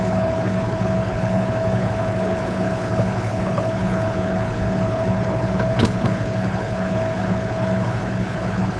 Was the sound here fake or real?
fake